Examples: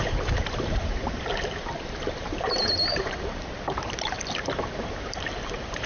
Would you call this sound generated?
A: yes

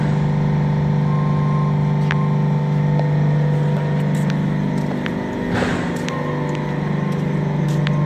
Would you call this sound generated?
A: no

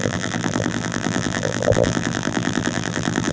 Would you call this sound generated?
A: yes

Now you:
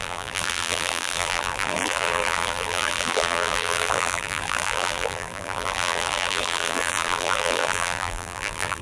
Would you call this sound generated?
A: yes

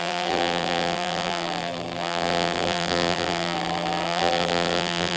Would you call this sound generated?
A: yes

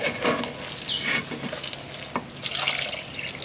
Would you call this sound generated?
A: no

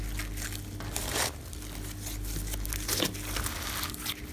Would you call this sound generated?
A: no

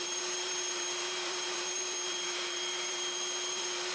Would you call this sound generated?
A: yes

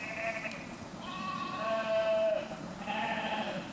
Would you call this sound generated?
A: no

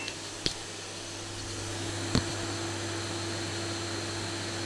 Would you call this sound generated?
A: no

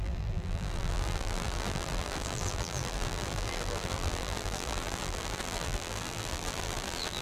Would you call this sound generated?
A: yes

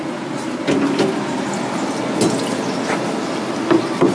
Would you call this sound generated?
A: no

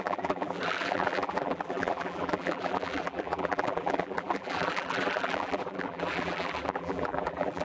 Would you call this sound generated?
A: yes